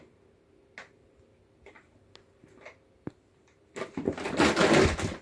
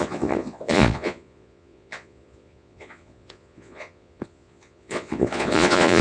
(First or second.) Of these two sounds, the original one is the first